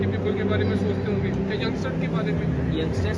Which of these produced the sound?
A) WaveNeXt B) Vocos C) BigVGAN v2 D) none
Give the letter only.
D